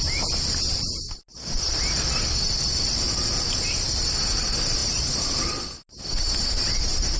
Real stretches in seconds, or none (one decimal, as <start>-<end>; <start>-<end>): 0.0-7.2